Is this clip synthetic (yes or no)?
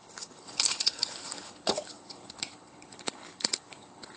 yes